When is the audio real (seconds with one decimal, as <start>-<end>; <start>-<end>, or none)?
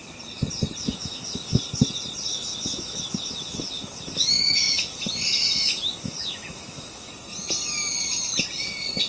0.0-0.8; 1.6-2.3; 7.1-9.1